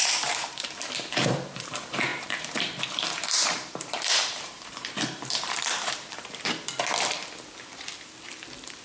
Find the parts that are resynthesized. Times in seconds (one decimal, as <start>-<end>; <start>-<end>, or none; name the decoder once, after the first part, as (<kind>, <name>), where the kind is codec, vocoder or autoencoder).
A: 0.0-0.7 (vocoder, BigVGAN v2); 2.1-6.7